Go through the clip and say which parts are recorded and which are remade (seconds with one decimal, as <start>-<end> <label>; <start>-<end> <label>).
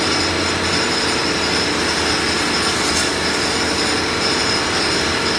0.0-5.4 recorded